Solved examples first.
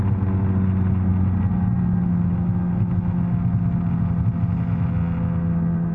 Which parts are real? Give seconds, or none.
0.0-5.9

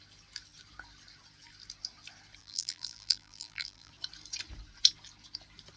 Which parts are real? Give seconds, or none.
0.0-2.4; 3.9-5.8

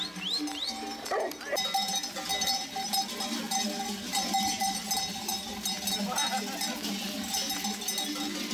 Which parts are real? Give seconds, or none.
0.0-8.5